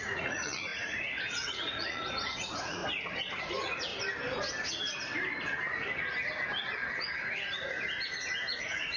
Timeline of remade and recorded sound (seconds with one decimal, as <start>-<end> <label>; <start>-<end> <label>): 0.0-2.8 remade; 2.8-3.4 recorded; 3.4-3.9 remade; 3.9-8.6 recorded; 8.6-9.0 remade